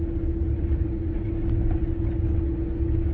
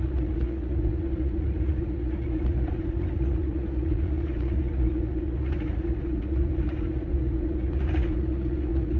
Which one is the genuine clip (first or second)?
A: first